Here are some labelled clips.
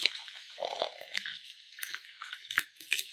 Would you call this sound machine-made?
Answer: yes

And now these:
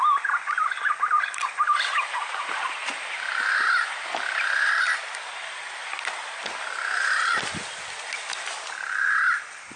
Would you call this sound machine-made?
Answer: no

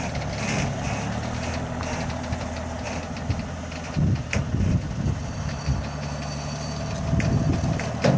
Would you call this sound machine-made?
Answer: no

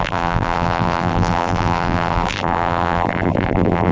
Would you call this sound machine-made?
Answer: yes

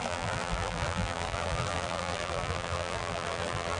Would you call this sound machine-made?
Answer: yes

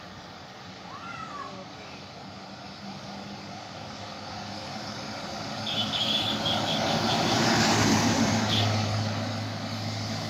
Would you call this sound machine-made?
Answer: yes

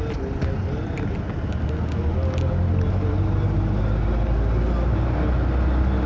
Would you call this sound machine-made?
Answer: no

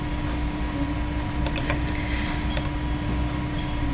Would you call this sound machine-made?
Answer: no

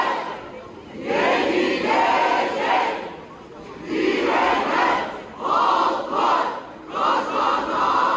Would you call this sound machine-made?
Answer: no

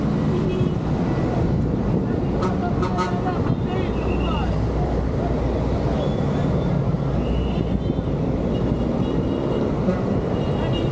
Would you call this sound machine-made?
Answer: no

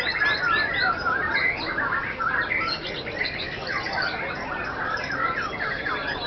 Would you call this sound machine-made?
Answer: no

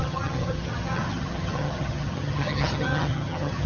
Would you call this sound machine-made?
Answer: yes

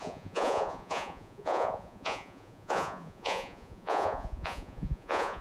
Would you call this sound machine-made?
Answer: yes